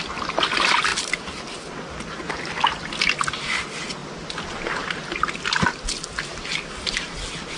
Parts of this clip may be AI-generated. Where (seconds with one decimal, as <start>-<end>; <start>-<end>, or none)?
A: none